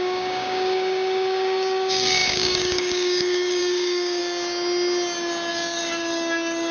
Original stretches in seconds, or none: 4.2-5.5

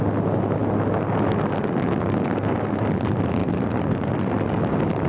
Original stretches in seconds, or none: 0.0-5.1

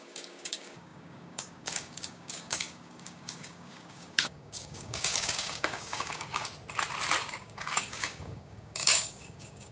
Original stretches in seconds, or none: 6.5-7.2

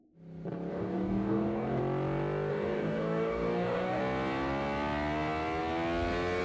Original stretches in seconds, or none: 0.0-0.7; 1.8-2.5; 4.0-6.4

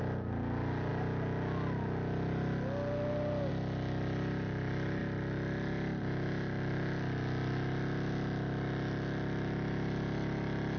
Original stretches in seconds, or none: 0.0-10.8

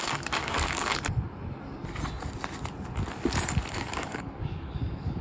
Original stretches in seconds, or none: 0.9-3.7

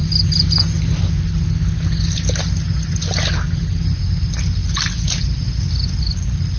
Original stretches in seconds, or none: 0.0-6.6

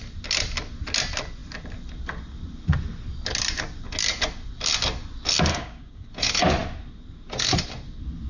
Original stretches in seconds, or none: 0.0-5.5; 6.1-8.3